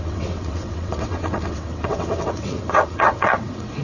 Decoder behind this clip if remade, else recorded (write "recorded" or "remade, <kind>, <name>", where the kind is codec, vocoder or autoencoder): remade, vocoder, WaveNeXt